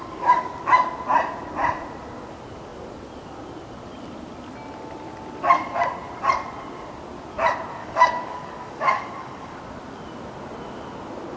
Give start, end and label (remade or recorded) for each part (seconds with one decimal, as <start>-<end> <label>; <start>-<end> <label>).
0.0-0.5 remade; 0.5-7.8 recorded; 7.8-9.6 remade; 9.6-11.4 recorded